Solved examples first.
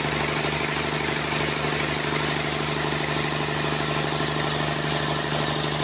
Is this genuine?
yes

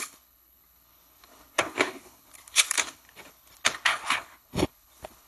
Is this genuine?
no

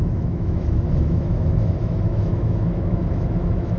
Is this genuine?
no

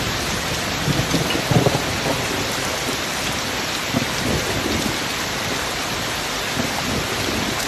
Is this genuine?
yes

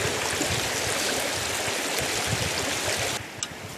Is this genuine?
yes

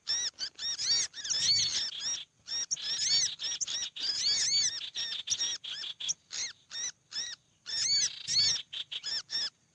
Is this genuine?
yes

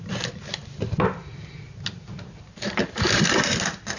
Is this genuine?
yes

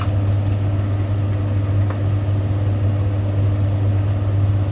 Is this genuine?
yes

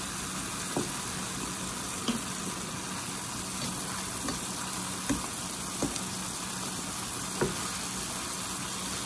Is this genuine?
yes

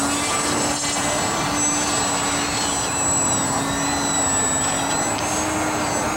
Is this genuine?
yes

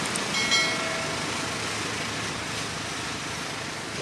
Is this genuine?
yes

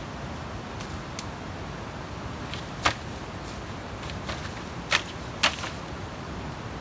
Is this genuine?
yes